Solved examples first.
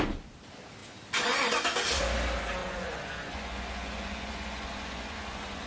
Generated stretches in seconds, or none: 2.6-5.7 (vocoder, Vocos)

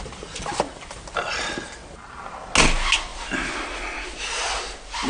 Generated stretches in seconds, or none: none